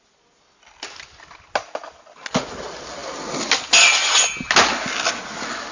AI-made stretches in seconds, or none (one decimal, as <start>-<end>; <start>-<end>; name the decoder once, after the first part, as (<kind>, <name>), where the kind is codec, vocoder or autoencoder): none